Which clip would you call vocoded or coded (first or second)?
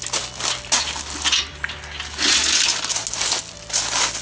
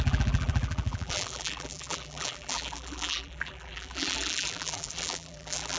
second